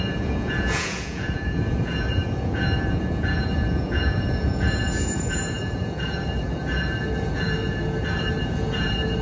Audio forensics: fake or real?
fake